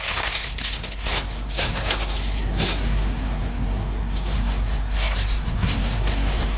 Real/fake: fake